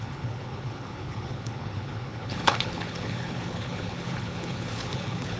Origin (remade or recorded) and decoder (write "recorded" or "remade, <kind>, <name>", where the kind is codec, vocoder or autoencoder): remade, codec, HILCodec